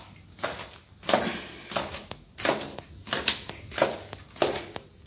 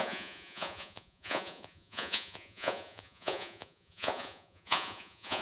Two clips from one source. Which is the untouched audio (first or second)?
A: first